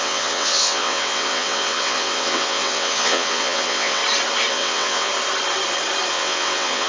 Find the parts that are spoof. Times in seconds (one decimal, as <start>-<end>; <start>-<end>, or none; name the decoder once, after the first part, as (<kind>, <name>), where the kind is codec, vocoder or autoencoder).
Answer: 0.0-4.0 (vocoder, WaveNeXt); 4.5-5.1; 6.1-6.9